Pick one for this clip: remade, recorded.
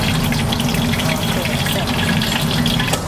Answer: recorded